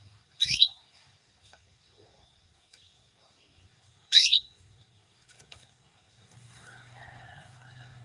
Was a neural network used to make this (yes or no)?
yes